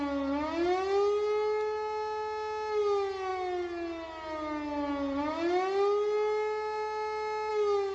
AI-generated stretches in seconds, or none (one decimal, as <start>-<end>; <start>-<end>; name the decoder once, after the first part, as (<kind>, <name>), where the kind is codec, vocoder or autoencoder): none